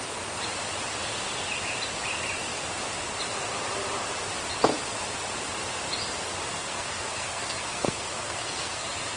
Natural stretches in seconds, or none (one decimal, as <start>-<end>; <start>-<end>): 0.0-6.6